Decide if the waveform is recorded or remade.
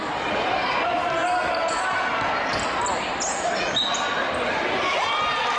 recorded